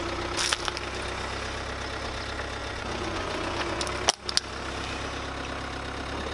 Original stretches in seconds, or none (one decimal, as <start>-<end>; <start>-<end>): 0.0-2.6; 3.8-6.3